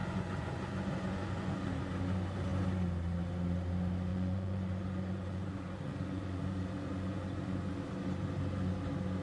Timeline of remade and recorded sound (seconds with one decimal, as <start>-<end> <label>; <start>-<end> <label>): 0.0-1.9 remade; 1.9-4.1 recorded; 4.1-7.7 remade; 7.7-9.2 recorded

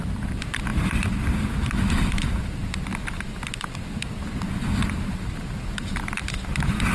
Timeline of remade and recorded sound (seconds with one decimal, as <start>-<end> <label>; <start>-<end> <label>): 0.0-6.9 recorded